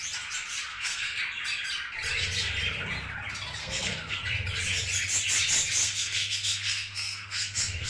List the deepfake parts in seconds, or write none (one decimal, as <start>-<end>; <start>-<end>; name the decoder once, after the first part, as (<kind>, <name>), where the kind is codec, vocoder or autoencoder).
0.7-1.2 (codec, SNAC); 3.6-4.2; 5.8-7.9